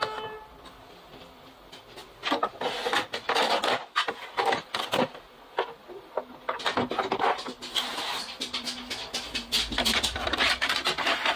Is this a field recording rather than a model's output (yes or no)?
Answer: yes